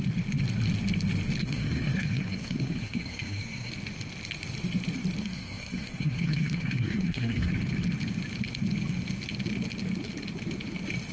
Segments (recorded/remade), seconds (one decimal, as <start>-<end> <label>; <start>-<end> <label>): 0.0-1.4 recorded; 1.4-3.7 remade; 3.7-5.2 recorded; 5.2-7.5 remade; 7.5-11.1 recorded